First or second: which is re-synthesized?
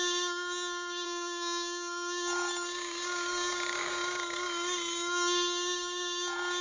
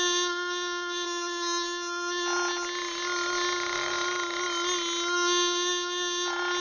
first